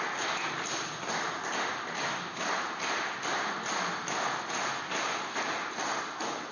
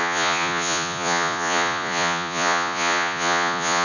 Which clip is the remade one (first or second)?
second